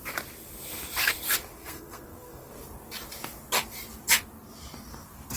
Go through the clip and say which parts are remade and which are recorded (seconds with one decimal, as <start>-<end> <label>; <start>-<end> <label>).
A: 0.0-1.6 recorded; 1.6-2.5 remade; 2.5-5.4 recorded